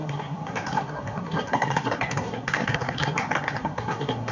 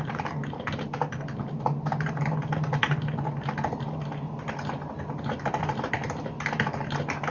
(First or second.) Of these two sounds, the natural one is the second